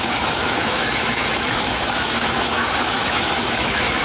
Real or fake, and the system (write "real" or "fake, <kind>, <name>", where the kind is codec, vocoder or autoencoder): fake, autoencoder, DAC-VAE